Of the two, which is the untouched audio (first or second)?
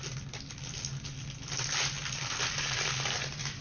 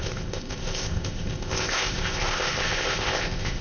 first